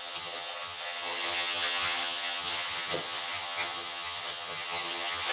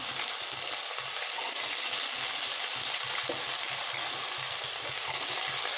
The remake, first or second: first